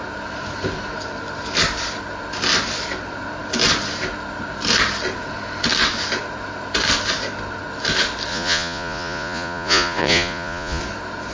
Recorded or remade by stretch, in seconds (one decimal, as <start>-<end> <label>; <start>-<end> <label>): 0.0-8.3 recorded; 8.3-10.8 remade; 10.8-11.3 recorded

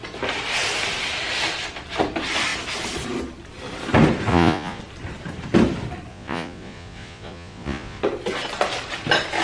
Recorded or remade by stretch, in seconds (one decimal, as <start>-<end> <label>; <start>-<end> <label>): 0.0-4.3 recorded; 4.3-4.8 remade; 4.8-6.1 recorded; 6.1-8.0 remade; 8.0-9.4 recorded

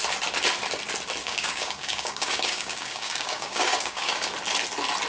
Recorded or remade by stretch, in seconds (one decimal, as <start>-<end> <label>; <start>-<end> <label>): 0.0-1.2 recorded; 1.2-4.3 remade; 4.3-5.1 recorded

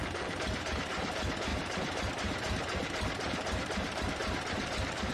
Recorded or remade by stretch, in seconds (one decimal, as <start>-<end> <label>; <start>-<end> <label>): 0.0-5.1 remade

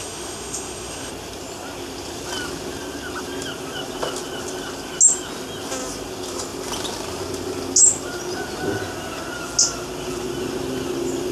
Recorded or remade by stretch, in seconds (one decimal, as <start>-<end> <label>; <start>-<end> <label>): 0.0-1.1 remade; 1.1-11.3 recorded

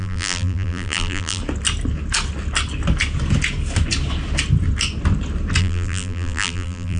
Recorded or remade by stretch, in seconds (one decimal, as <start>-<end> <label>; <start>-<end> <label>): 0.0-1.4 remade; 1.4-5.6 recorded; 5.6-7.0 remade

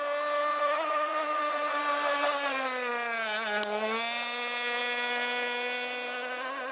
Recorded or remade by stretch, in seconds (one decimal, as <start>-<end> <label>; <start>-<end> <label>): 0.0-0.5 recorded; 0.5-1.8 remade; 1.8-6.7 recorded

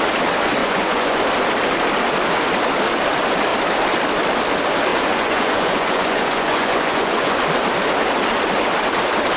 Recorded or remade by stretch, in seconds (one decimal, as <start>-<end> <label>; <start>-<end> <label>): 0.0-0.6 recorded; 0.6-1.2 remade; 1.2-4.9 recorded; 4.9-7.4 remade; 7.4-9.4 recorded